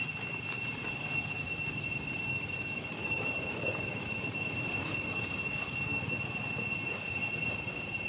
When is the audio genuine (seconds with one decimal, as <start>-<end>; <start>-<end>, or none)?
0.0-2.1; 5.2-8.1